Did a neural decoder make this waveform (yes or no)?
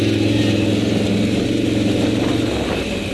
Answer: no